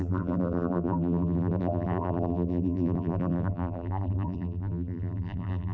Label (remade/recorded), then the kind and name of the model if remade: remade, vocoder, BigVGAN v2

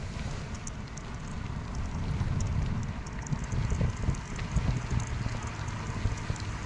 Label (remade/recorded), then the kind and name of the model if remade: recorded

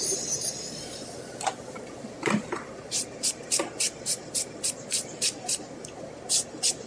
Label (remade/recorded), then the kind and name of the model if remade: remade, vocoder, BigVGAN v2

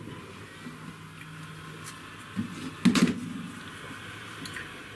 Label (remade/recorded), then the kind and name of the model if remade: recorded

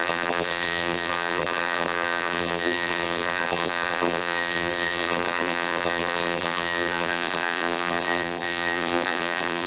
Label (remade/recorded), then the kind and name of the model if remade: remade, vocoder, BigVGAN v2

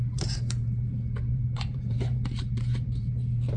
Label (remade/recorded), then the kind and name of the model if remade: remade, vocoder, BigVGAN v2